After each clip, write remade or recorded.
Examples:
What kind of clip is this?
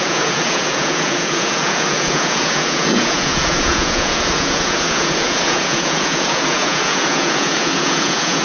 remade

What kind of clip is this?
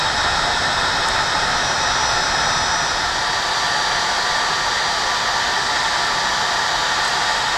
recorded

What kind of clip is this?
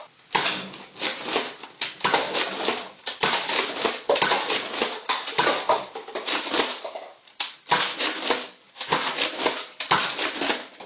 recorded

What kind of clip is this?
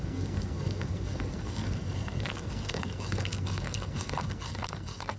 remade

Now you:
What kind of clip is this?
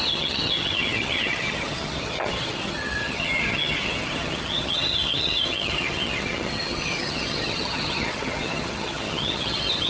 remade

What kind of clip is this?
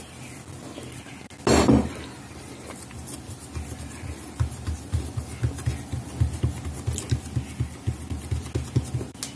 recorded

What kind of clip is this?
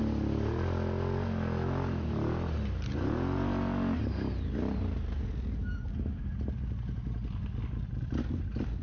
recorded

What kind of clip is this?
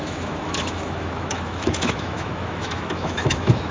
remade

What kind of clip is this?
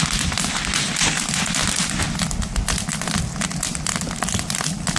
recorded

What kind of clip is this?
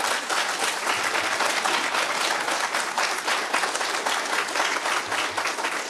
recorded